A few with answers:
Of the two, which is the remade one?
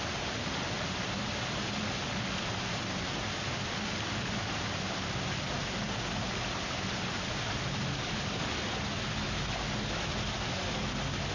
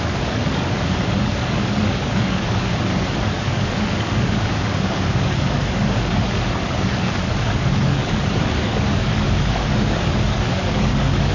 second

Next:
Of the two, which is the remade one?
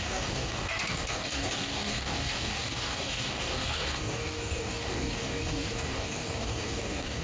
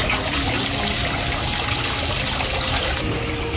first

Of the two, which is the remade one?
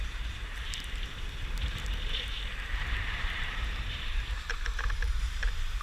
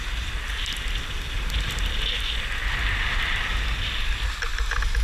first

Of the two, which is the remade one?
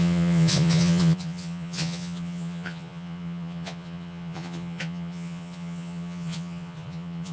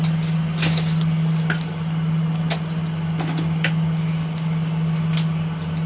first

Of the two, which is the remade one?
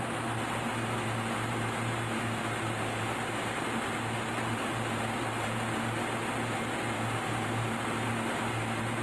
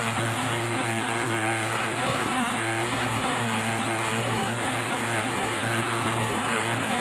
second